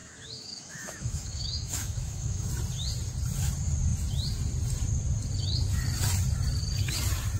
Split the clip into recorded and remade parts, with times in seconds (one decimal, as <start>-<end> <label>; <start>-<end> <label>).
0.0-2.5 remade; 2.5-7.4 recorded